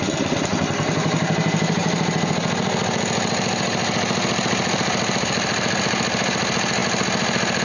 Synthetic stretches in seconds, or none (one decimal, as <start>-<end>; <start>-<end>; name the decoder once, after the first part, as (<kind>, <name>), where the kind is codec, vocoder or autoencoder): none